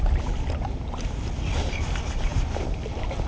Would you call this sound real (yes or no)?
yes